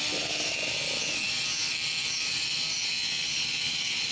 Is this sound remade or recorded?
remade